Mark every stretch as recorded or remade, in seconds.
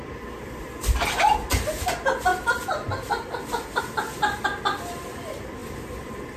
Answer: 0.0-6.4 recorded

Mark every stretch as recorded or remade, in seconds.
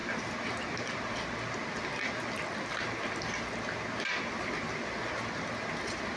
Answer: 0.0-1.3 remade; 1.3-6.2 recorded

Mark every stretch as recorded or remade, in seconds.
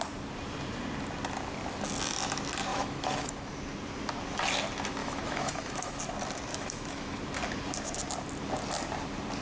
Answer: 0.0-2.7 recorded; 2.7-3.5 remade; 3.5-5.0 recorded; 5.0-6.0 remade; 6.0-6.5 recorded; 6.5-7.2 remade; 7.2-9.4 recorded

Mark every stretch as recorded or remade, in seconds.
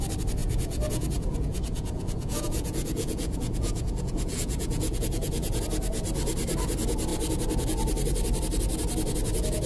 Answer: 0.0-0.4 recorded; 0.4-5.6 remade; 5.6-9.7 recorded